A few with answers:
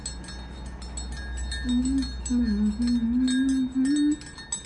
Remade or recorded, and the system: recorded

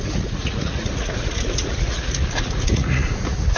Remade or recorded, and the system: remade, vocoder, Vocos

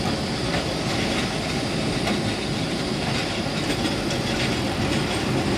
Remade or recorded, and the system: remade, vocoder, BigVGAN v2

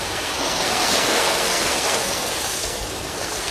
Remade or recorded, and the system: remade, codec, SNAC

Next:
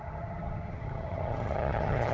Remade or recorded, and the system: remade, vocoder, HiFi-GAN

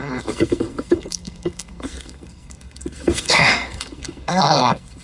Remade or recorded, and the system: remade, codec, SNAC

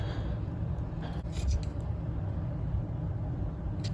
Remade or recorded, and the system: recorded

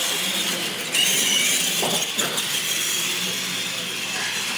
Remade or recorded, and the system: recorded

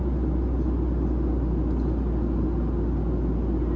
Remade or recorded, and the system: recorded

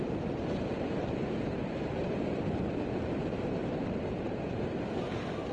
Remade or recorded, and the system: remade, vocoder, BigVGAN v2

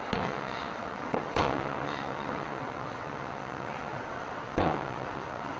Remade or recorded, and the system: remade, vocoder, WaveNeXt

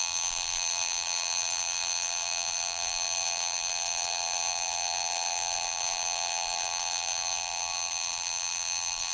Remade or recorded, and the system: remade, vocoder, BigVGAN v2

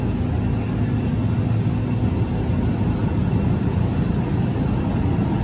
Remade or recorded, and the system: recorded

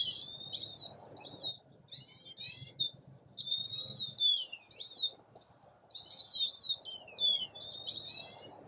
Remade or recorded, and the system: recorded